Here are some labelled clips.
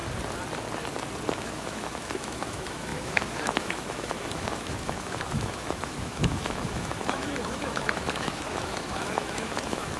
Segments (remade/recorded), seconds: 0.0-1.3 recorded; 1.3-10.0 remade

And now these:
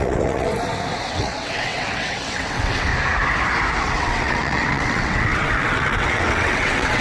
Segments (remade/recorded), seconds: 0.0-0.5 remade; 0.5-1.1 recorded; 1.1-2.9 remade; 2.9-3.8 recorded; 3.8-7.0 remade

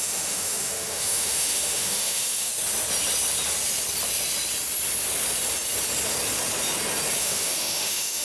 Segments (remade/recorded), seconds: 0.0-2.5 remade; 2.5-7.2 recorded; 7.2-8.2 remade

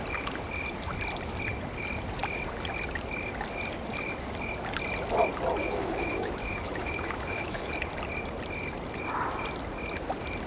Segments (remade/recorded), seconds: 0.0-5.6 recorded; 5.6-7.7 remade; 7.7-10.5 recorded

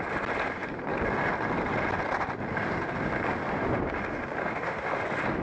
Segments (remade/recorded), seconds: 0.0-4.4 recorded; 4.4-5.0 remade; 5.0-5.4 recorded